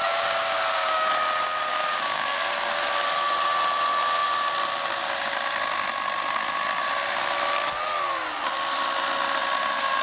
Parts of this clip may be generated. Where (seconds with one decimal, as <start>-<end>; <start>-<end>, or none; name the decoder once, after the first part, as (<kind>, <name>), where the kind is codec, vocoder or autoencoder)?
0.0-1.1 (codec, DAC); 1.7-2.4